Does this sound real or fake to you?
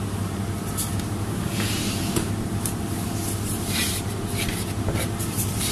fake